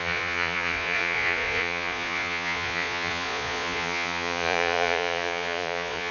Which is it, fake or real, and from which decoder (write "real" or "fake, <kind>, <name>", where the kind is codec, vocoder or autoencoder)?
fake, vocoder, Vocos